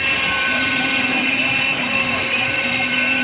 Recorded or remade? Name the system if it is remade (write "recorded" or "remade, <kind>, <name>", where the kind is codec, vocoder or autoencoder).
remade, vocoder, BigVGAN v2